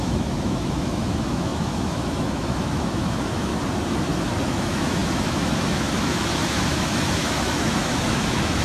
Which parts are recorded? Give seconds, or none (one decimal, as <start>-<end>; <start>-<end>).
3.5-4.5